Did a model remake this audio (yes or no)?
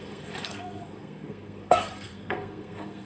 yes